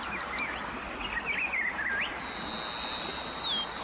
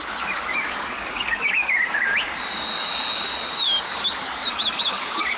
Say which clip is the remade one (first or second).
second